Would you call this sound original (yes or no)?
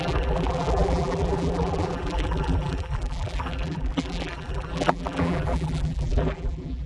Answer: no